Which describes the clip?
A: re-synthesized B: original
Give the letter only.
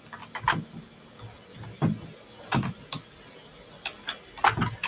B